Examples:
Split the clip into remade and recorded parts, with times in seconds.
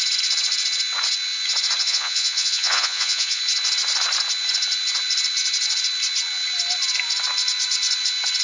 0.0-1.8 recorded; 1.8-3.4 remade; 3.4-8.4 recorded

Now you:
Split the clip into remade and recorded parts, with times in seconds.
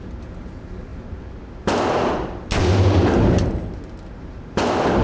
0.0-5.0 recorded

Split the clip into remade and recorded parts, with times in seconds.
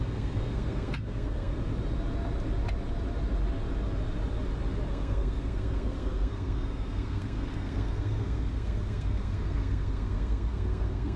0.0-1.5 remade; 1.5-4.9 recorded; 4.9-11.2 remade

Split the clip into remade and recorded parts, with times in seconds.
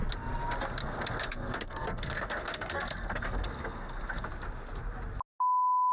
0.0-0.8 recorded; 0.8-4.3 remade; 4.3-5.9 recorded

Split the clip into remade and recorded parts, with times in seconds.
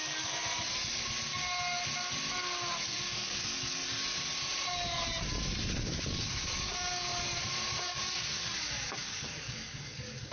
0.0-0.4 remade; 0.4-2.9 recorded; 2.9-3.8 remade; 3.8-5.8 recorded; 5.8-7.1 remade; 7.1-7.8 recorded; 7.8-10.3 remade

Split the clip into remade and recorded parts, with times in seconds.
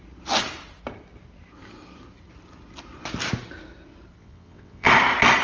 0.0-4.2 recorded; 4.2-4.9 remade; 4.9-5.4 recorded